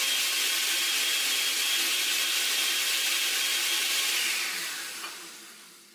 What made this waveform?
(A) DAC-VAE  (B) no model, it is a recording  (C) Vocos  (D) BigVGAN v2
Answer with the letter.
B